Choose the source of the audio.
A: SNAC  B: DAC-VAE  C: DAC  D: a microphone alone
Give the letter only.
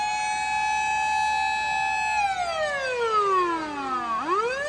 D